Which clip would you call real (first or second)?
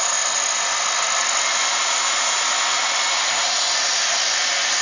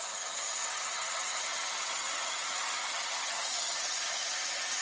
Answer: first